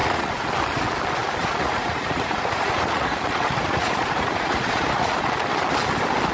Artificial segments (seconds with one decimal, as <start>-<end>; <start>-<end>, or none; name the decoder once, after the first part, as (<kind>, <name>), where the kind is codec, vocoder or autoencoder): 0.0-0.5 (vocoder, Vocos); 1.4-5.2